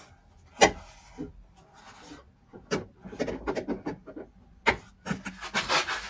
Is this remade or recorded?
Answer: recorded